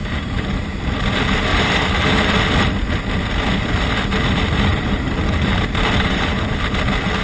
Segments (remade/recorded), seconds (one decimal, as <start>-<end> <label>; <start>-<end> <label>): 0.0-0.8 remade; 0.8-1.5 recorded; 1.5-2.4 remade; 2.4-4.7 recorded; 4.7-6.4 remade; 6.4-7.2 recorded